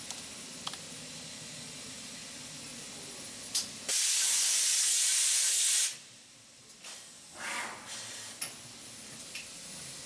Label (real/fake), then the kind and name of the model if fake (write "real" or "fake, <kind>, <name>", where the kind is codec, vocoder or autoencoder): real